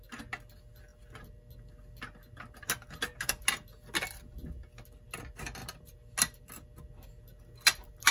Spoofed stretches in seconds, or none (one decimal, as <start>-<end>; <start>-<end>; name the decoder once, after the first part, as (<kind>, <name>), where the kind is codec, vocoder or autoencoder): none